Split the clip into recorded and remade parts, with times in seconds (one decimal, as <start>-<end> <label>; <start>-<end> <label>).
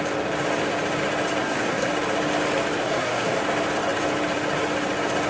0.0-1.4 recorded; 1.4-1.9 remade; 1.9-2.8 recorded; 2.8-3.4 remade; 3.4-5.3 recorded